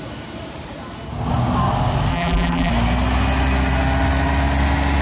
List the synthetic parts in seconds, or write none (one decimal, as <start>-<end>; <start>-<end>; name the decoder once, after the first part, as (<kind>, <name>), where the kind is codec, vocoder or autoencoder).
2.1-2.7 (vocoder, BigVGAN v2)